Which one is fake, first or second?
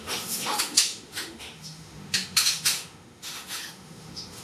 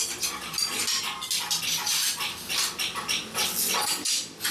first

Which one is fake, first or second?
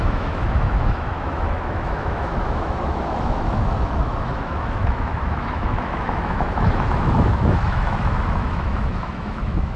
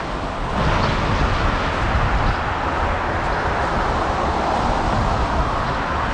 first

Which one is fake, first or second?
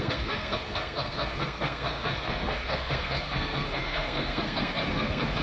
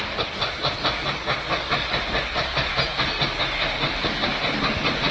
first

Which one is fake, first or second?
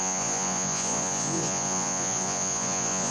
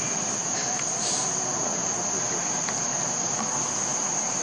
first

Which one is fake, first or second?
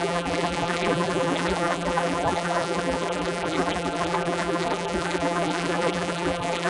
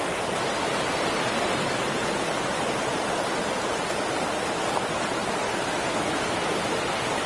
first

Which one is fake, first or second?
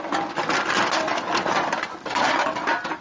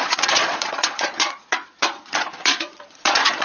second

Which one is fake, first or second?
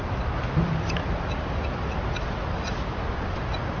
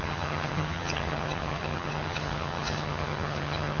second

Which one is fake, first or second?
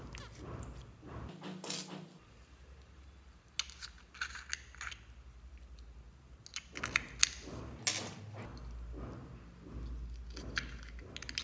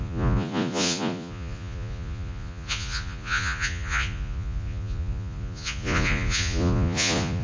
second